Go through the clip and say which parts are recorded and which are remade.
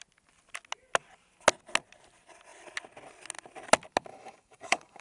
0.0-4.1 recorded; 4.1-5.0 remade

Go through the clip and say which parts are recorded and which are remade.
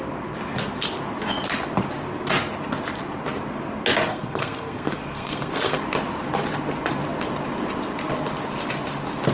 0.0-4.1 recorded; 4.1-5.8 remade; 5.8-9.3 recorded